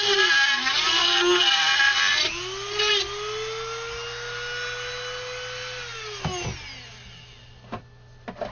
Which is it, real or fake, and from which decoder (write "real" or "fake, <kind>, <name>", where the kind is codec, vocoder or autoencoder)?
real